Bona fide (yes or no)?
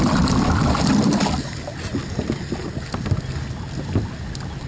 yes